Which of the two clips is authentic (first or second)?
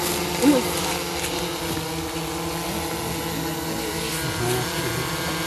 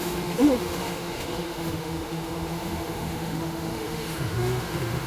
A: first